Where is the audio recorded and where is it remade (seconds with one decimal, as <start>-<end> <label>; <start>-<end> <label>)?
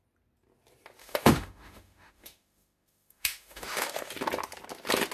0.0-1.0 recorded; 1.0-4.1 remade; 4.1-5.1 recorded